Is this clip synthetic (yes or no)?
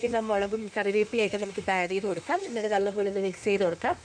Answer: yes